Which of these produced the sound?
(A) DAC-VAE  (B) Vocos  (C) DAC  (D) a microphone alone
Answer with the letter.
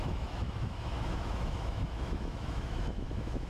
A